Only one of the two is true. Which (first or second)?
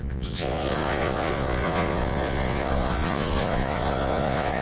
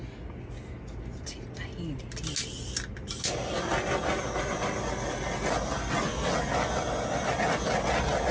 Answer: second